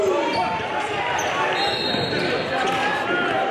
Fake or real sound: real